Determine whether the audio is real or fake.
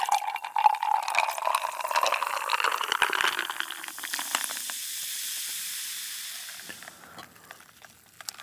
real